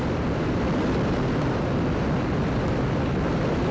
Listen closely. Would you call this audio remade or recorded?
remade